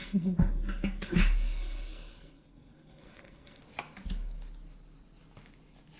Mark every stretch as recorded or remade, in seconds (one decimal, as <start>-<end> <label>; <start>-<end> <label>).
0.0-3.6 remade; 3.6-6.0 recorded